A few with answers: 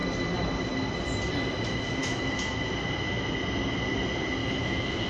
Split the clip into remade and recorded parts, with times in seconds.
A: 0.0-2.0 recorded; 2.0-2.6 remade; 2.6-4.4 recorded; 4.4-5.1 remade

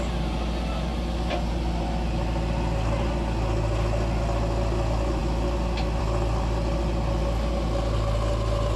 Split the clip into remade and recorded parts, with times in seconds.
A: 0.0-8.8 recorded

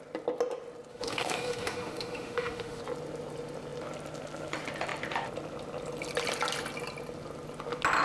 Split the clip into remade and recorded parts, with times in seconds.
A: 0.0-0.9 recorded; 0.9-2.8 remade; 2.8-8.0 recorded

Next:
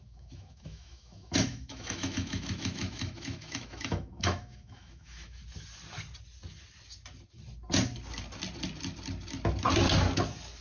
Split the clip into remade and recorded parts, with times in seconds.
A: 0.0-5.4 remade; 5.4-10.6 recorded

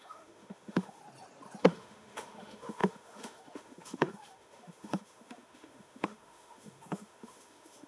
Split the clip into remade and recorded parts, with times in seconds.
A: 0.0-1.0 remade; 1.0-1.6 recorded; 1.6-7.9 remade

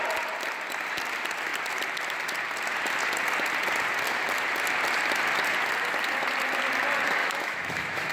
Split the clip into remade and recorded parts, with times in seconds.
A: 0.0-7.2 recorded; 7.2-8.1 remade

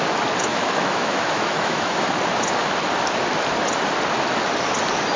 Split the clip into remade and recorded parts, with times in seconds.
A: 0.0-0.5 recorded; 0.5-2.1 remade; 2.1-5.2 recorded

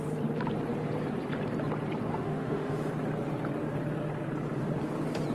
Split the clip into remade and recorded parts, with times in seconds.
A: 0.0-2.1 recorded; 2.1-2.9 remade; 2.9-5.3 recorded